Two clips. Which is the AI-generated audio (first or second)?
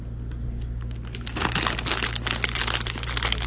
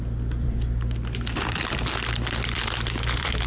second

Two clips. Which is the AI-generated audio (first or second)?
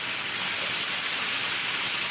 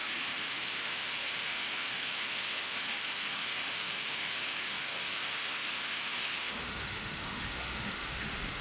second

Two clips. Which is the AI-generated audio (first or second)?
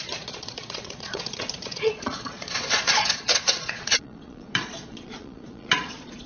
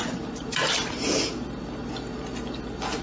first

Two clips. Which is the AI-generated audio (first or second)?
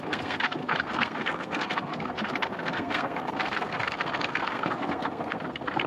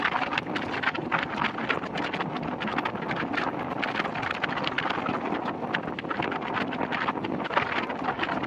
first